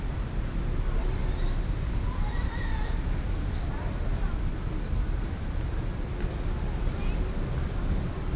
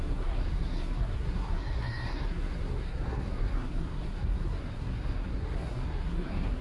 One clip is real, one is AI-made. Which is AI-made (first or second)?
second